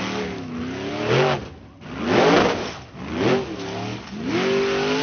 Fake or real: real